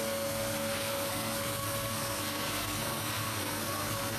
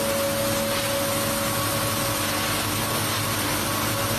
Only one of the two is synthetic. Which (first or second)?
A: first